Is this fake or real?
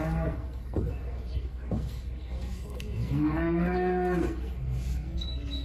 fake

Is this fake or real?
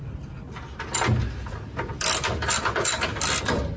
real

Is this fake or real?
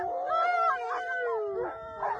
real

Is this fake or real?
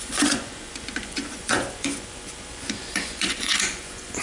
fake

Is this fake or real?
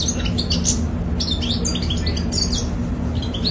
real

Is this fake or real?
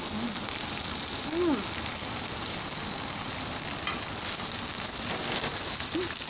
real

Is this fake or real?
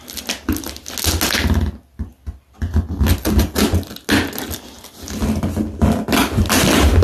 real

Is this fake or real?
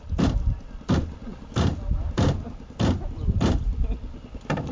real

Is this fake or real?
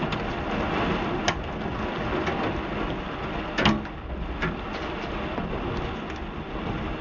real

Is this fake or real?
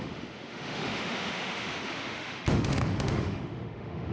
fake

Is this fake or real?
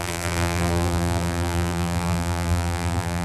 fake